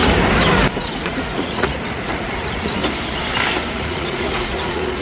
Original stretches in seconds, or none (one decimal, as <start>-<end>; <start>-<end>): 0.0-0.7; 2.8-3.7